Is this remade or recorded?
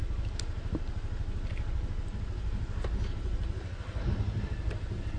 recorded